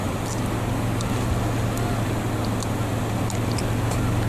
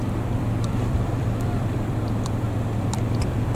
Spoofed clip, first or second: second